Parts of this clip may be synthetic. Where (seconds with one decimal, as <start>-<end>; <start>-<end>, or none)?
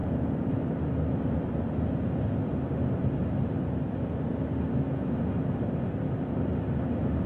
0.0-0.6